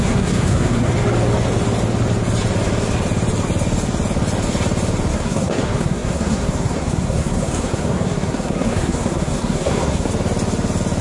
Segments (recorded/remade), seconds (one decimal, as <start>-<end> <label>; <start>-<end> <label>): 0.0-0.9 remade; 0.9-5.1 recorded; 5.1-10.1 remade; 10.1-11.0 recorded